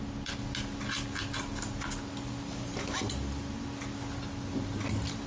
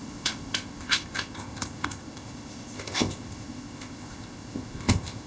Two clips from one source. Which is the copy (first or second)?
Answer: second